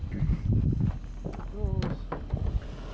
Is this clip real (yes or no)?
yes